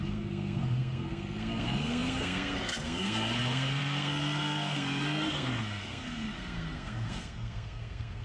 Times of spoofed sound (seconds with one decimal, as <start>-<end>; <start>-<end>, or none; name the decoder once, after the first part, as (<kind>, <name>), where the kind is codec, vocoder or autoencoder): 0.0-8.2 (codec, SNAC)